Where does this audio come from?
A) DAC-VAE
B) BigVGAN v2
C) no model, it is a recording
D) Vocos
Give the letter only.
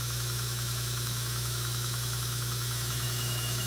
A